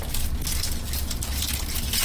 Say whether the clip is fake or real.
real